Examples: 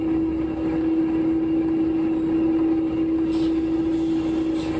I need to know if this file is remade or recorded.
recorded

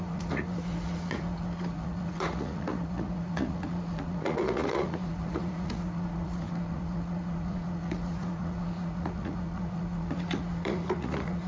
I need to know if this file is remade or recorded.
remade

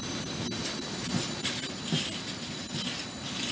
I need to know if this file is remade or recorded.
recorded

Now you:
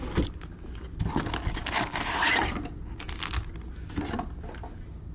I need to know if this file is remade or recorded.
recorded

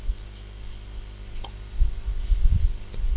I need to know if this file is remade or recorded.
recorded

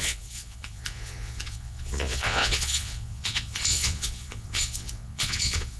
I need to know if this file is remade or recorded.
remade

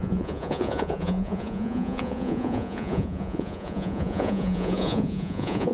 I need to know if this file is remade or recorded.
remade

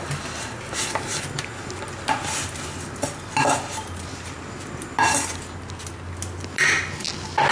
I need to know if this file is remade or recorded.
recorded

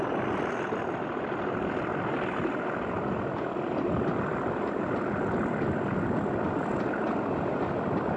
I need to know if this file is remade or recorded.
recorded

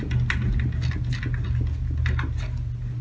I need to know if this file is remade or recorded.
recorded